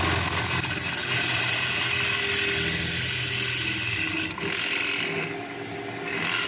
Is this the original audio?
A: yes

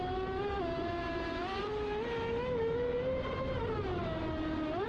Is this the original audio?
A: yes